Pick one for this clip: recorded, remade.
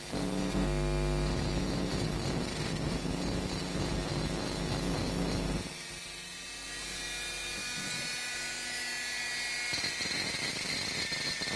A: recorded